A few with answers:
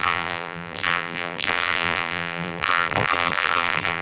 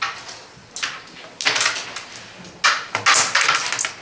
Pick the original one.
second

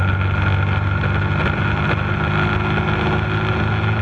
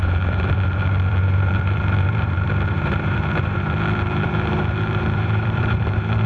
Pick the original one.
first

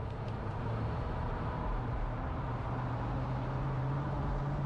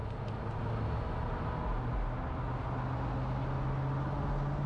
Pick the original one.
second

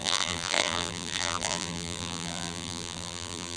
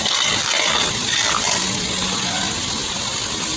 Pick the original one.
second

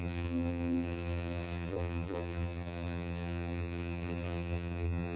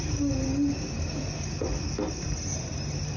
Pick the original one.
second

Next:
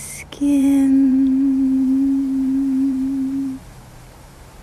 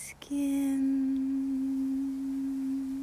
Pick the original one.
second